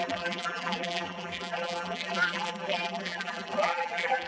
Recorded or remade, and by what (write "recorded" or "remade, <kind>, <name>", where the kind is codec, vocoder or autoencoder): remade, vocoder, BigVGAN v2